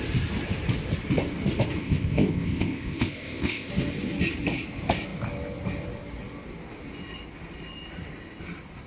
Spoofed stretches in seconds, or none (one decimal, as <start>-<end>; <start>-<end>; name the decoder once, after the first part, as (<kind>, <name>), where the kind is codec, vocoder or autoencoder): 1.8-3.7 (codec, ZipCodec)